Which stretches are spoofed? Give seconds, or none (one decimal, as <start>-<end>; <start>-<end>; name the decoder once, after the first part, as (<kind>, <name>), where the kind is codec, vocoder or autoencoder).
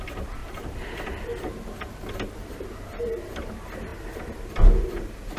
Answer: 0.4-1.9 (vocoder, BigVGAN v2)